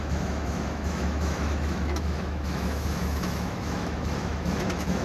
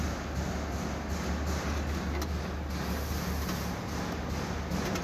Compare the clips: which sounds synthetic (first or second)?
first